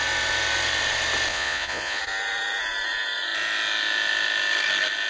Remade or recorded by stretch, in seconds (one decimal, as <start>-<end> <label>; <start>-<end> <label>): 0.0-1.3 recorded; 1.3-2.0 remade; 2.0-5.1 recorded